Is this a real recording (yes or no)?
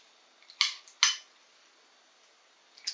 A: yes